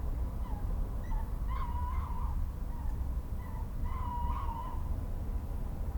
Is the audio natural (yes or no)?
yes